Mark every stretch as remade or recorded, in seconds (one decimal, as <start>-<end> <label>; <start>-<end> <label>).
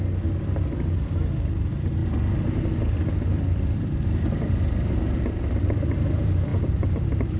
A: 0.0-2.0 remade; 2.0-2.9 recorded; 2.9-7.4 remade